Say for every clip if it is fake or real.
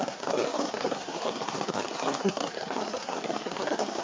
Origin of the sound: fake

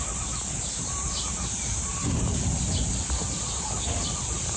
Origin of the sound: real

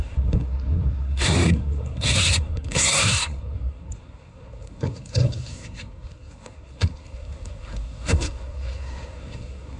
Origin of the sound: fake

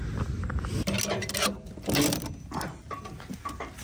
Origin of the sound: real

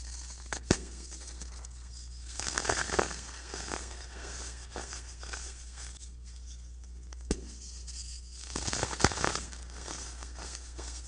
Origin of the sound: fake